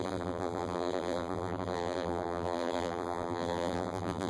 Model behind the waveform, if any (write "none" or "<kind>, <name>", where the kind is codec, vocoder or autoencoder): vocoder, BigVGAN v2